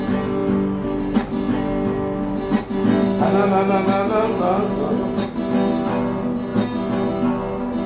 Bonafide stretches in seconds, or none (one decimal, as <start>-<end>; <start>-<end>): 0.0-7.9